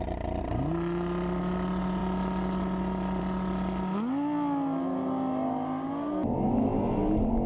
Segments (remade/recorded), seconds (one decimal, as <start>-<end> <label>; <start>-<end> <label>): 0.0-7.5 recorded